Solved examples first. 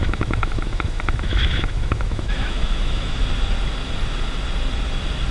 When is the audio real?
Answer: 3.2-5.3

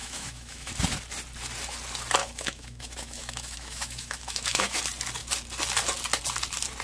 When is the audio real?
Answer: 0.7-2.2; 4.8-6.8

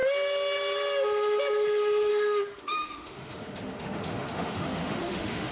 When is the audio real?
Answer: 0.0-2.1

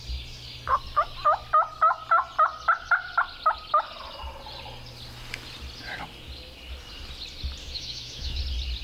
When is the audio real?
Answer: 0.0-7.6; 8.4-8.8

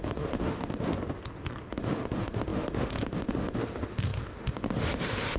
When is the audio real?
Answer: 0.9-1.7